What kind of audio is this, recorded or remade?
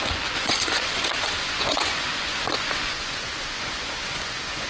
remade